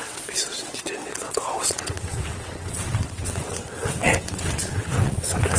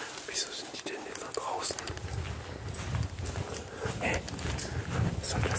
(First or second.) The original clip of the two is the second